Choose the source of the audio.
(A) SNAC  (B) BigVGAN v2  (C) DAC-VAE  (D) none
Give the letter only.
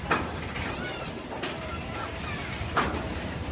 D